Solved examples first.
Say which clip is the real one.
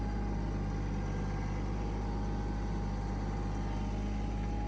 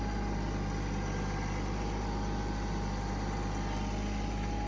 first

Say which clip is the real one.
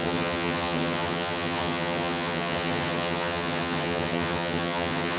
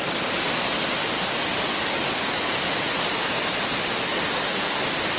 second